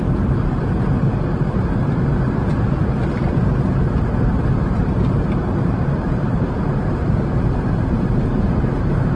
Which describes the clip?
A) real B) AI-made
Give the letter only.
B